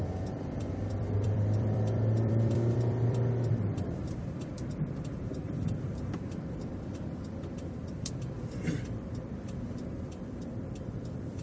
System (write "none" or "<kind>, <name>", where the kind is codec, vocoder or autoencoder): vocoder, BigVGAN v2